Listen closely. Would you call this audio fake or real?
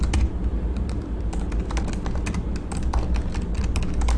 real